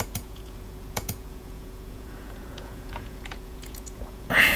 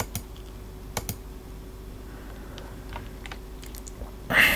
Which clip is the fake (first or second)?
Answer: first